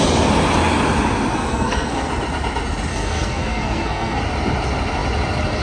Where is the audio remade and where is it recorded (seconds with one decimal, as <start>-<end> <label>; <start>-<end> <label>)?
0.0-1.3 recorded; 1.3-2.1 remade; 2.1-2.9 recorded; 2.9-4.2 remade; 4.2-5.6 recorded